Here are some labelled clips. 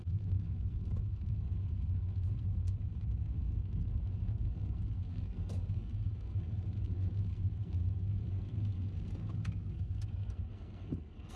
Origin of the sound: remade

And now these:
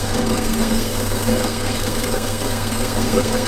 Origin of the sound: remade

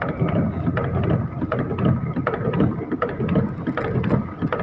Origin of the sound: recorded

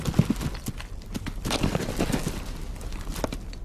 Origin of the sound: recorded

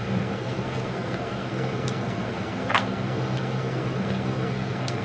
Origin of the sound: remade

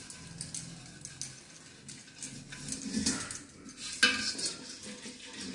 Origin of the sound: recorded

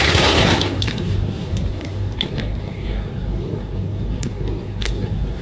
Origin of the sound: remade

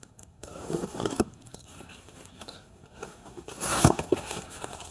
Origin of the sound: remade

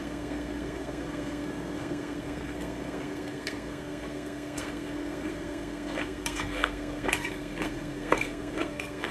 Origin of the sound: remade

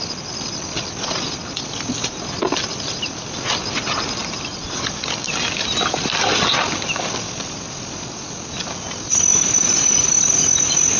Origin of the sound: recorded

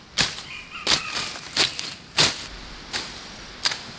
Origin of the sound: recorded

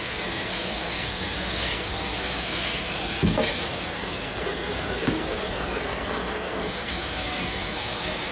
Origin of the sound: remade